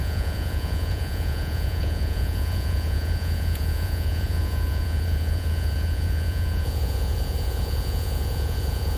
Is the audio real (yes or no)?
no